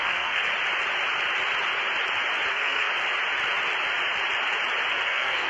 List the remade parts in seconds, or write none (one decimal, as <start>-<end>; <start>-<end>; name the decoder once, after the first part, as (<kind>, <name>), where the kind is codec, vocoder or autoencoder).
0.0-0.5 (codec, SNAC); 2.5-2.9; 4.9-5.5